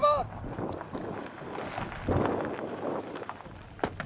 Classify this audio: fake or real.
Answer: real